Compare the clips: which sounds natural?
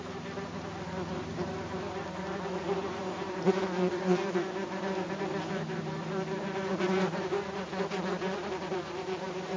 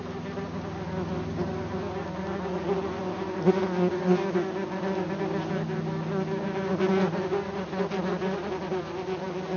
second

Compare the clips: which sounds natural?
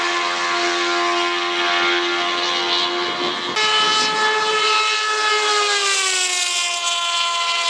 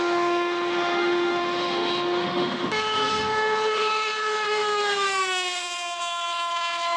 first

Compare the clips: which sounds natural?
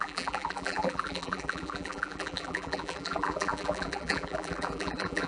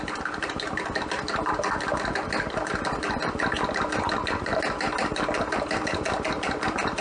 second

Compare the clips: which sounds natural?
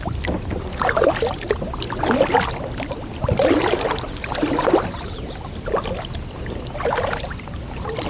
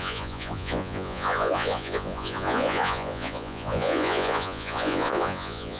first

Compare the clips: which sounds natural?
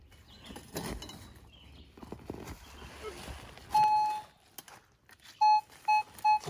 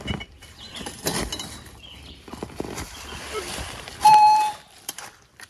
first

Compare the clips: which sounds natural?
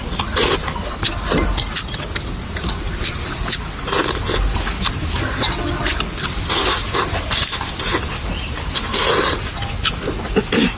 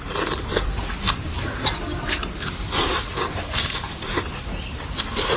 first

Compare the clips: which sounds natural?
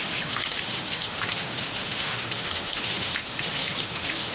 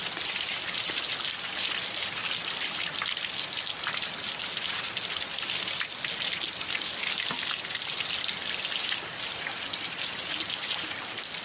second